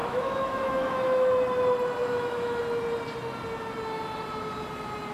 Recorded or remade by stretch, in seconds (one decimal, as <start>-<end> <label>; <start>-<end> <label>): 0.0-1.3 remade; 1.3-2.0 recorded; 2.0-2.6 remade; 2.6-5.1 recorded